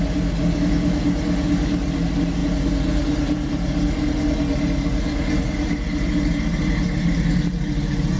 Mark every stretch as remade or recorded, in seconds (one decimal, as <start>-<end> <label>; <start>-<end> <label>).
0.0-8.2 recorded